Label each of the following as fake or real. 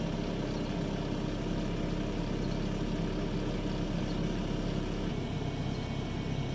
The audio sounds real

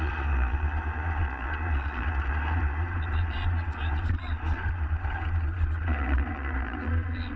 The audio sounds fake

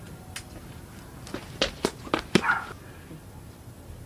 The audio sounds real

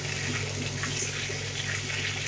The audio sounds real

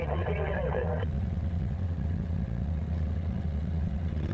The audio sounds fake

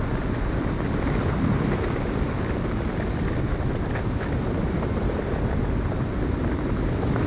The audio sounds real